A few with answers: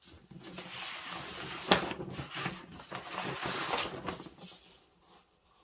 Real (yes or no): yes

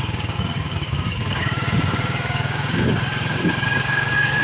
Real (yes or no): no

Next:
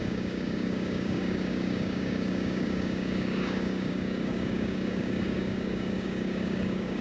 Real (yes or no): no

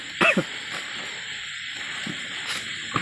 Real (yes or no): yes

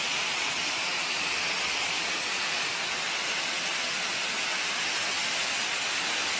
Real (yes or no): yes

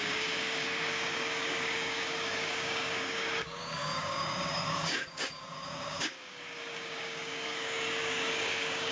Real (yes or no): no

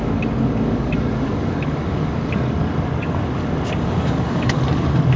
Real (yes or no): no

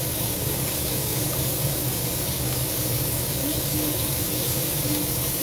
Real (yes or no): no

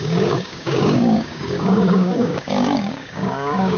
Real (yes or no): no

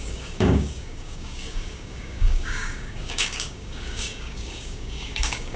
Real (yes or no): no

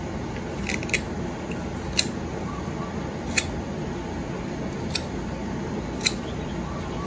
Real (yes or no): yes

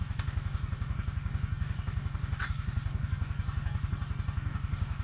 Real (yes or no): no